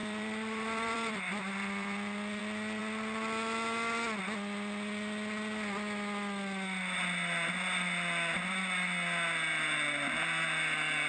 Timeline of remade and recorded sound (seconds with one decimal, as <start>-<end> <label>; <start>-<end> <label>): 0.0-2.4 remade; 2.4-11.1 recorded